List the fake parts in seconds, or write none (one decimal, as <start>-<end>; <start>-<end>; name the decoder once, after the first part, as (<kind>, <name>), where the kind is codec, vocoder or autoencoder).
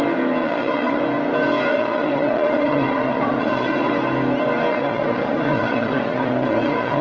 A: 0.4-1.0 (vocoder, Vocos); 1.7-3.9; 4.7-7.0